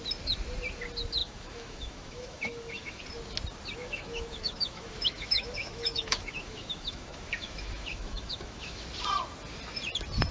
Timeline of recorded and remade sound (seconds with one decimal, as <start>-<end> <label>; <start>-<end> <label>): 0.0-1.2 recorded; 1.2-3.0 remade; 3.0-3.8 recorded; 3.8-8.8 remade; 8.8-10.3 recorded